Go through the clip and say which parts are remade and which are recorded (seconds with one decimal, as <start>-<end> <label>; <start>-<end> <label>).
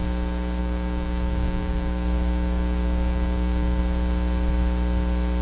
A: 0.0-0.6 recorded; 0.6-3.8 remade; 3.8-5.4 recorded